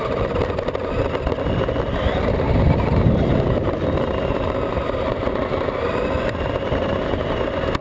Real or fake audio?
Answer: real